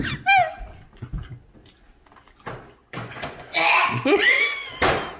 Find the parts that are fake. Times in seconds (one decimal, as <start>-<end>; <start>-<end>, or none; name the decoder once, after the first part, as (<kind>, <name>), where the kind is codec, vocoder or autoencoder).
2.8-4.8 (vocoder, Vocos)